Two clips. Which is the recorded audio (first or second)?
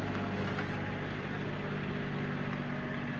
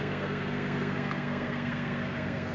first